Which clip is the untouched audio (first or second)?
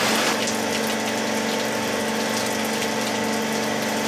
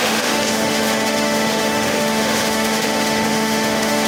first